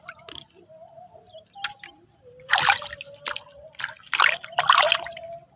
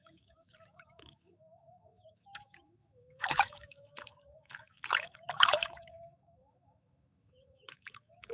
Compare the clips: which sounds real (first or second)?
first